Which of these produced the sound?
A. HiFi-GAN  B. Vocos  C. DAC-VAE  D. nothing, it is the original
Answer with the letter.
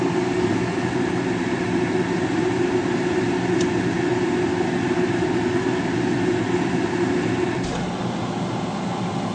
D